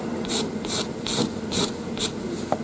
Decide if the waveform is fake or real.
real